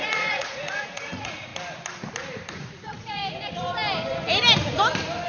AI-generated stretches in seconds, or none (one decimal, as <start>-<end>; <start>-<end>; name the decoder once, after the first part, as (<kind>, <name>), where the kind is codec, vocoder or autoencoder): 0.0-1.5 (vocoder, Vocos); 2.5-3.2